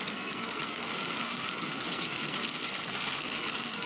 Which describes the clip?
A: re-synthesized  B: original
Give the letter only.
A